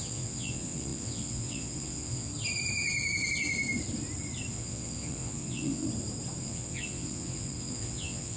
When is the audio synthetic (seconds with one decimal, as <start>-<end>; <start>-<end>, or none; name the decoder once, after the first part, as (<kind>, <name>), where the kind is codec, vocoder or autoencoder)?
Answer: 0.0-2.3 (vocoder, WaveNeXt); 4.5-5.8; 6.4-8.4